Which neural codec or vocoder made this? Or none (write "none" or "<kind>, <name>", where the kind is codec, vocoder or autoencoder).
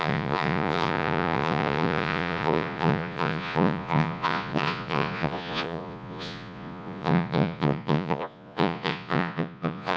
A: vocoder, Vocos